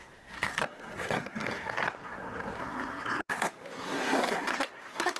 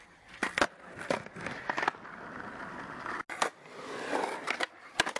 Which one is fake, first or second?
first